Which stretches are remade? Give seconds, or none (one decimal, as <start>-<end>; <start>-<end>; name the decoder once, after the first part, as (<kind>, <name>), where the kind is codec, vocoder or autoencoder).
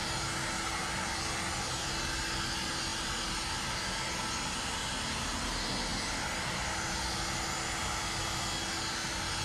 none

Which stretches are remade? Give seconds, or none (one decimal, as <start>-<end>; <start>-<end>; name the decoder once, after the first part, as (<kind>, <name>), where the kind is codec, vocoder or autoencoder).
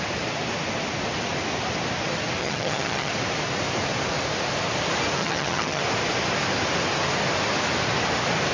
2.4-3.1 (vocoder, HiFi-GAN); 5.2-5.8